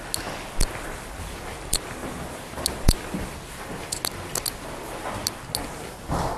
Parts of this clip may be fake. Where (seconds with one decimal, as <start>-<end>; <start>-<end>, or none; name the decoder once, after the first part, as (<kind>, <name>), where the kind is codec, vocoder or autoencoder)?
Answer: none